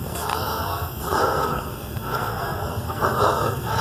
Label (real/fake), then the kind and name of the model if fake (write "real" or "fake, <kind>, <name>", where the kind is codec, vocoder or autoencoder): fake, codec, SNAC